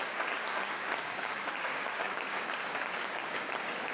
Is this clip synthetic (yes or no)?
yes